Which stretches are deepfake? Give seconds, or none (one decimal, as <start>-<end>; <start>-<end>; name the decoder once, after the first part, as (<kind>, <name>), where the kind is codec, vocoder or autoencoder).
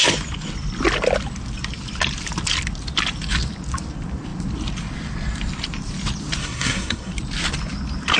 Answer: 6.4-7.1 (codec, SNAC)